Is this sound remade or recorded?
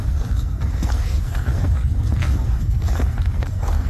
remade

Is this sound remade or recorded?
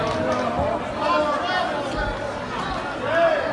recorded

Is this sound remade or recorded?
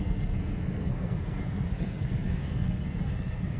remade